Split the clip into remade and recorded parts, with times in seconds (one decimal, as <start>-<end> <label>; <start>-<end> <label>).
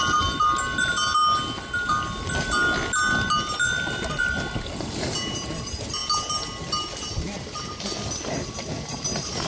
0.0-9.5 recorded